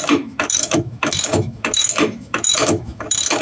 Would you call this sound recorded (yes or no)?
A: no